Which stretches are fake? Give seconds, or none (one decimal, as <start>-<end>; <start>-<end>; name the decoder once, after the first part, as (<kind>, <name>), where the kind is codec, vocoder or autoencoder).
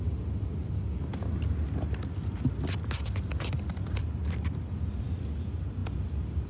none